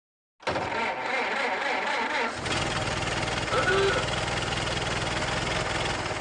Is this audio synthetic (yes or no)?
no